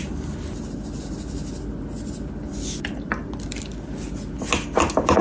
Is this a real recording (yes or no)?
yes